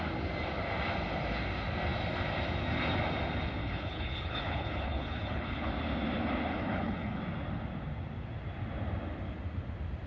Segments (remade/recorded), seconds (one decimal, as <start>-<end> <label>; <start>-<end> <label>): 0.0-3.6 recorded; 3.6-5.7 remade; 5.7-6.5 recorded; 6.5-7.2 remade; 7.2-10.1 recorded